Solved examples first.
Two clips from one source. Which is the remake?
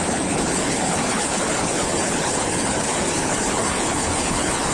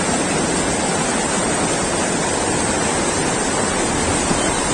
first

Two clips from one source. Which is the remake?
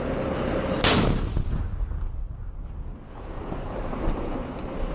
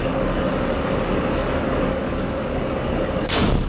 second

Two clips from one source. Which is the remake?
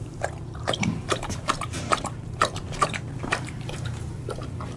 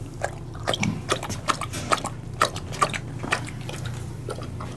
first